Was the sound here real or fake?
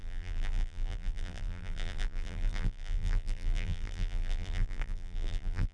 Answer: fake